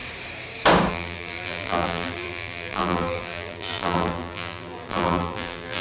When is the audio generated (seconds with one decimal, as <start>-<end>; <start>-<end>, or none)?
0.9-5.8

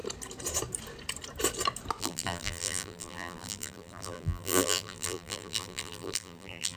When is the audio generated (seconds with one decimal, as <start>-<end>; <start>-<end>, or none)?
2.0-6.8

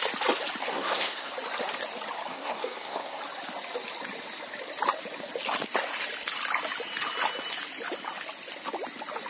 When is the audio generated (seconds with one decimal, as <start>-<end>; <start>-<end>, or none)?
0.7-1.3; 2.3-3.2

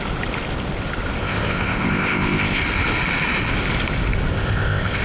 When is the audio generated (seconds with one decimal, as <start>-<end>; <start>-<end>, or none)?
1.2-2.6; 4.3-5.0